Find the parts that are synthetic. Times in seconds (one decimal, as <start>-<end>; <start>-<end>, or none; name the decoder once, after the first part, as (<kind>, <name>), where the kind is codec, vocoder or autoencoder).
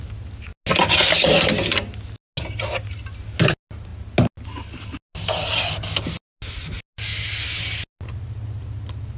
none